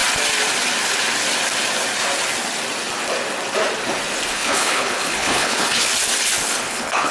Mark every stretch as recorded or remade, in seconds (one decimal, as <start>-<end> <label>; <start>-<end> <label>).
0.0-4.3 recorded; 4.3-5.9 remade; 5.9-6.6 recorded; 6.6-7.1 remade